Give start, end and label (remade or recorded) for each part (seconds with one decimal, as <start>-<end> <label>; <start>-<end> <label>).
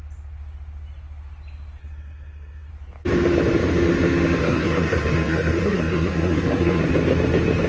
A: 0.0-1.8 recorded; 1.8-2.7 remade; 2.7-4.4 recorded; 4.4-6.8 remade; 6.8-7.7 recorded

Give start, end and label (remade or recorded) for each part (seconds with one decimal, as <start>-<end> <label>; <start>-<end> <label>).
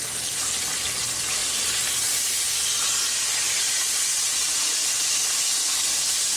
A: 0.0-6.4 recorded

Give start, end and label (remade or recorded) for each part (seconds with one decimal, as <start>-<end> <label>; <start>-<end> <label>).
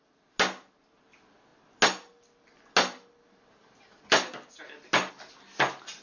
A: 0.0-6.0 recorded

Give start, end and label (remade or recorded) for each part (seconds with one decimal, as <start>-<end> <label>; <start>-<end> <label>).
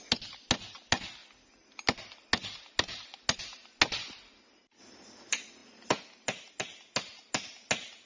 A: 0.0-8.1 recorded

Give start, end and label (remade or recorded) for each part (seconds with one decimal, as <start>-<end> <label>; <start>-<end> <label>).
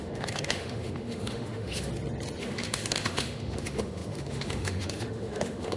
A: 0.0-1.9 remade; 1.9-2.4 recorded; 2.4-5.8 remade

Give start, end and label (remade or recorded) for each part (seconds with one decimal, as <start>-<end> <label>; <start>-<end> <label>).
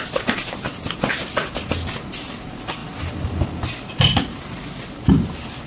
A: 0.0-2.8 recorded; 2.8-3.9 remade; 3.9-5.7 recorded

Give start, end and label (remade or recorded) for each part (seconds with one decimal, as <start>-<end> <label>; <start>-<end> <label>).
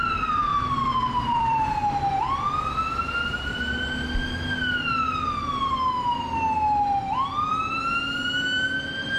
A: 0.0-0.5 recorded; 0.5-1.6 remade; 1.6-9.2 recorded